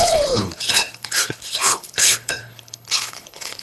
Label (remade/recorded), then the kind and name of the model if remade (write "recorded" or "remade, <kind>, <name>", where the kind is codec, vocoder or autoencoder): remade, codec, HILCodec